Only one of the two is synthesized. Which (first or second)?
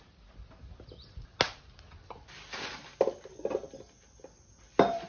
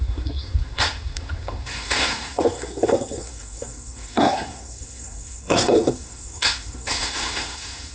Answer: second